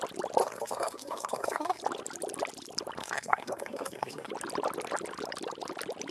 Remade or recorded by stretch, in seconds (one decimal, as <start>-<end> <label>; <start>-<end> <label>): 0.0-0.4 recorded; 0.4-1.8 remade; 1.8-3.0 recorded; 3.0-4.3 remade; 4.3-6.1 recorded